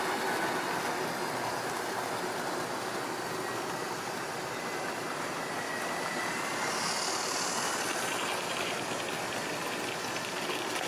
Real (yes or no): yes